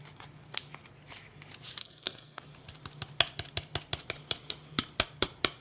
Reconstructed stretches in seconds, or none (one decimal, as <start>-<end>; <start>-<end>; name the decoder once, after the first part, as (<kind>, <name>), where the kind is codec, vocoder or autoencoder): 1.8-2.4 (codec, SNAC)